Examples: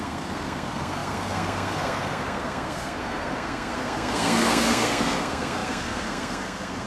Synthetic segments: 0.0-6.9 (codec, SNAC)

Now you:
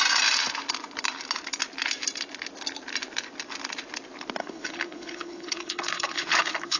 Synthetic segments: 4.4-6.8 (codec, HILCodec)